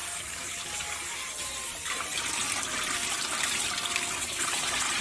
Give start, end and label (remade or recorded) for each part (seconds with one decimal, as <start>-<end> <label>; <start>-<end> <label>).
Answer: 0.0-4.2 recorded; 4.2-5.0 remade